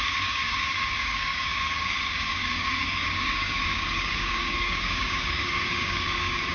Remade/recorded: remade